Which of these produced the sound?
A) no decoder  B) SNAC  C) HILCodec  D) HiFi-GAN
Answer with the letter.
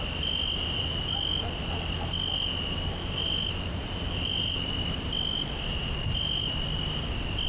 A